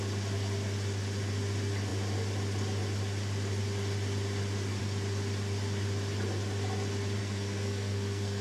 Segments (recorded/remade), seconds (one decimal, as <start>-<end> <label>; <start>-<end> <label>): 0.0-7.2 recorded; 7.2-8.4 remade